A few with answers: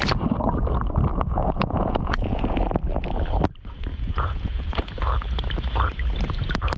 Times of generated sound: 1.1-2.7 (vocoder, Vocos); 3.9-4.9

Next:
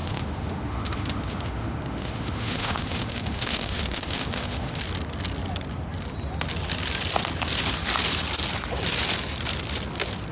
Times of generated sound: 0.0-4.8 (autoencoder, DAC-VAE)

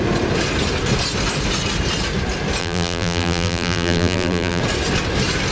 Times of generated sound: 2.6-4.6 (vocoder, BigVGAN v2)

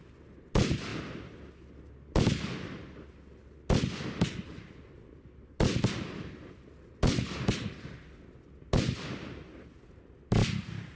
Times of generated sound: none

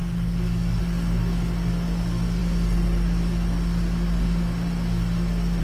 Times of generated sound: 0.0-0.8 (codec, DAC)

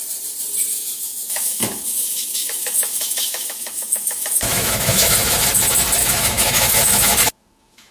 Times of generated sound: 0.7-5.2 (autoencoder, DAC-VAE); 6.0-7.9

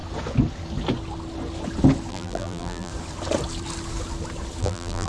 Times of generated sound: 2.1-2.9 (vocoder, BigVGAN v2); 4.6-5.1

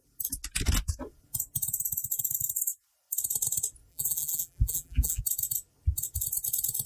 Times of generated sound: 3.9-5.2 (vocoder, BigVGAN v2)